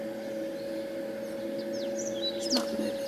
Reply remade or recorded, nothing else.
recorded